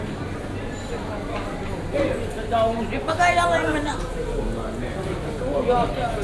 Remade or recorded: recorded